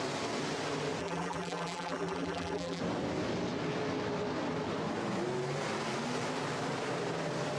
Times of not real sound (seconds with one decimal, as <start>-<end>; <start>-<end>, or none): 1.0-2.8